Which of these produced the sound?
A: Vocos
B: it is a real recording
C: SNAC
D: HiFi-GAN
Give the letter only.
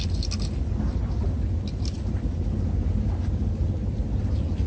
B